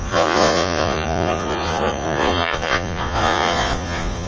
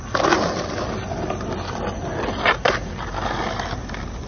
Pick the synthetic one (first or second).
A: first